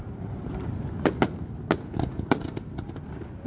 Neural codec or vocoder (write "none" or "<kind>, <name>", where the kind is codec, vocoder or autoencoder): none